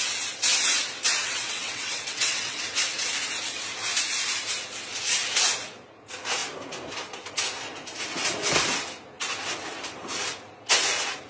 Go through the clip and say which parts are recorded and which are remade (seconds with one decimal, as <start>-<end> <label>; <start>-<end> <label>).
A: 0.0-1.2 recorded; 1.2-2.6 remade; 2.6-11.3 recorded